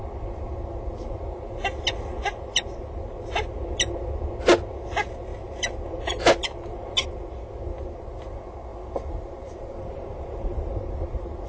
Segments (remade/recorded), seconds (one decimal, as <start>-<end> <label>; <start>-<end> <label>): 0.0-8.7 recorded; 8.7-11.5 remade